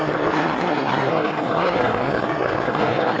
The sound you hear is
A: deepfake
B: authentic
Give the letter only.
A